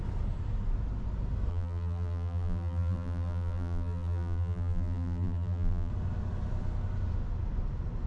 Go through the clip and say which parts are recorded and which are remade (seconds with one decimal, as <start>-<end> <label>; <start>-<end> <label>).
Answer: 0.0-1.5 recorded; 1.5-5.9 remade; 5.9-8.1 recorded